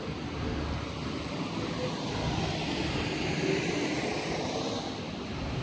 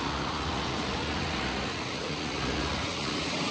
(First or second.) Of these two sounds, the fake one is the second